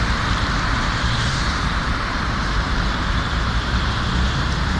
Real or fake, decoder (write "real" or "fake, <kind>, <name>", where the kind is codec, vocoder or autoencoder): fake, vocoder, BigVGAN v2